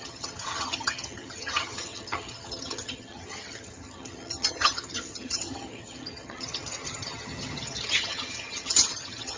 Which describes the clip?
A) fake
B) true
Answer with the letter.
A